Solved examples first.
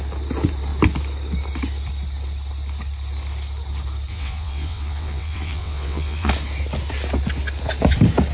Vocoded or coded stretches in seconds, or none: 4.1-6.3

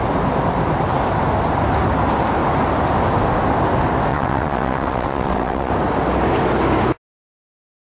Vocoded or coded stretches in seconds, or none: 4.1-5.7